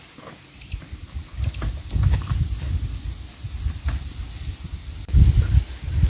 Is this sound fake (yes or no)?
no